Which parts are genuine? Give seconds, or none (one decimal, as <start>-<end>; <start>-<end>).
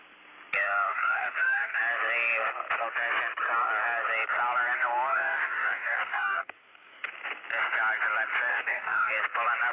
0.0-0.9; 1.8-5.1; 7.1-8.5; 9.1-9.7